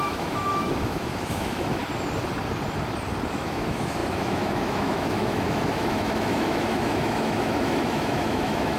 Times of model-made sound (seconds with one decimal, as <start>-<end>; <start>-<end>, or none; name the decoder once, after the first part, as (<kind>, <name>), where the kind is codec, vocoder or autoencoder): 0.0-1.8 (autoencoder, DAC-VAE); 3.3-8.8